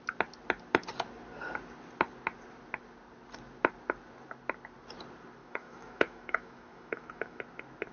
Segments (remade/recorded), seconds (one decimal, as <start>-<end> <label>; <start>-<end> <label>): 0.0-5.4 recorded; 5.4-7.4 remade; 7.4-7.9 recorded